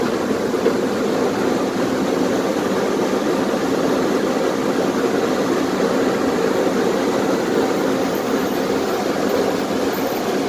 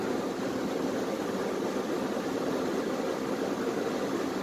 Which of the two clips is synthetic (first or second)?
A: second